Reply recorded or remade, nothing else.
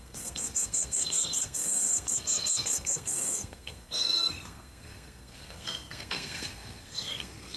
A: remade